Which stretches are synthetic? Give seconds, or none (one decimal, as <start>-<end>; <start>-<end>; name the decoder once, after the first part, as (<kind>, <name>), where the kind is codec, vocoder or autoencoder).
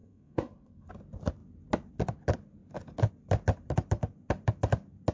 0.0-0.9 (codec, SNAC)